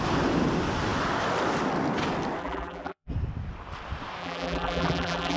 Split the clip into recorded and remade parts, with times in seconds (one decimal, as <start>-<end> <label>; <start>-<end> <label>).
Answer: 0.0-2.4 recorded; 2.4-3.1 remade; 3.1-4.2 recorded; 4.2-5.4 remade